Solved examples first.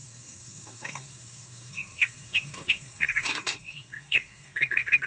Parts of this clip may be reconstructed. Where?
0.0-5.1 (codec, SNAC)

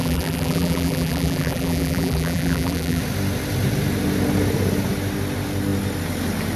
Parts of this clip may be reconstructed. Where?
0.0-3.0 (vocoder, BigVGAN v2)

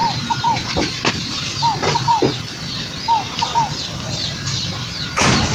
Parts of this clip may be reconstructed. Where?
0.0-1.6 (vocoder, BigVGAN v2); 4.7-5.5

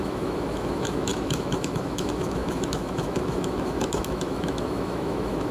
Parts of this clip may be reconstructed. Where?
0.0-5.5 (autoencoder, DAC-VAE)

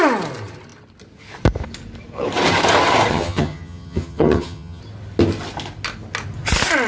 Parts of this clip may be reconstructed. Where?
3.1-4.8 (vocoder, HiFi-GAN)

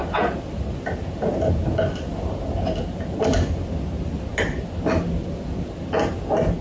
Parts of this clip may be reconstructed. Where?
none